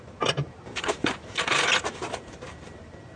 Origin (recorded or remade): remade